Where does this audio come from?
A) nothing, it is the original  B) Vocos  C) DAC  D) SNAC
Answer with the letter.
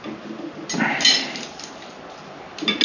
A